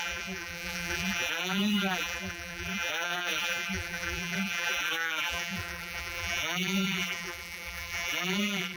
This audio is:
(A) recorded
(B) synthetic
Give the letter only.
B